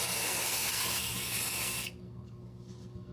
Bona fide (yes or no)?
no